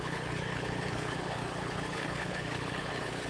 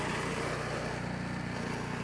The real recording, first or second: second